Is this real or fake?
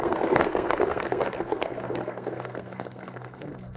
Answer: fake